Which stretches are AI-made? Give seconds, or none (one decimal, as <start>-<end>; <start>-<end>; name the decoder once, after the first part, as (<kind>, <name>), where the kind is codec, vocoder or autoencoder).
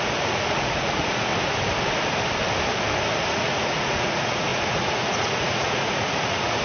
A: 0.0-1.3 (vocoder, Vocos); 3.3-6.6